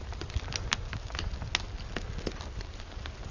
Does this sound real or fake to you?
real